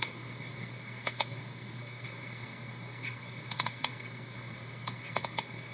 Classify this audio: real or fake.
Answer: fake